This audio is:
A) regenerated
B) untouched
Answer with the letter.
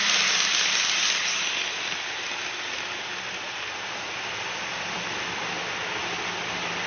B